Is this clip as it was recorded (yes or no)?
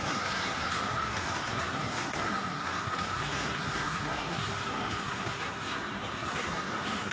no